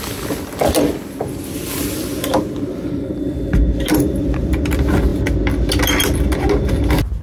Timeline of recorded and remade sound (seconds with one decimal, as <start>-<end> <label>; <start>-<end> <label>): 0.0-7.2 recorded